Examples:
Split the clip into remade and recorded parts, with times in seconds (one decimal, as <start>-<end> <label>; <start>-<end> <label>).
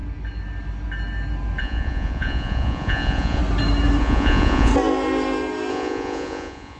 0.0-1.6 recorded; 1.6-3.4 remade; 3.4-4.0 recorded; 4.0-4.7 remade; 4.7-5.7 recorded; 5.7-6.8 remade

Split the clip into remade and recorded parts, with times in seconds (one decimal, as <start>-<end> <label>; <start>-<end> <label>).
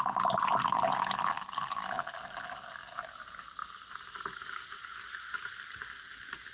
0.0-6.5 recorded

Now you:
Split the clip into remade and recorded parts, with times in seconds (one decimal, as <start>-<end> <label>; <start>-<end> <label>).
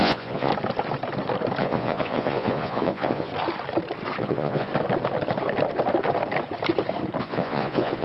0.0-0.5 remade; 0.5-1.6 recorded; 1.6-3.3 remade; 3.3-4.2 recorded; 4.2-4.7 remade; 4.7-7.2 recorded; 7.2-8.0 remade